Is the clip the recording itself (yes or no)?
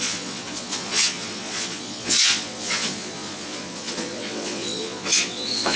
no